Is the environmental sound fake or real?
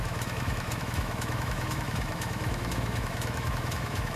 fake